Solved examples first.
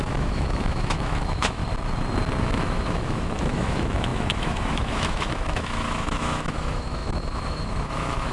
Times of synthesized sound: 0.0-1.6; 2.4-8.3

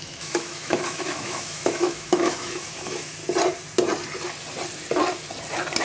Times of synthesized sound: 0.0-3.2